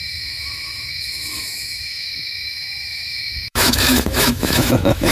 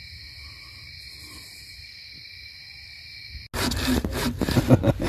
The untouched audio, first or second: second